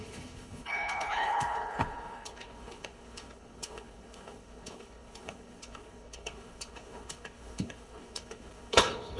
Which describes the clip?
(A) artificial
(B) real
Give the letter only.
A